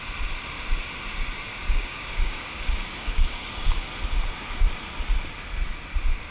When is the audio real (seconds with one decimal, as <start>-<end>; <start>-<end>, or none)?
0.0-1.5; 3.8-6.3